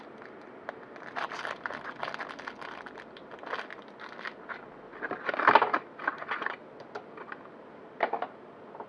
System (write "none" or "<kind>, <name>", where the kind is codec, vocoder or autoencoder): none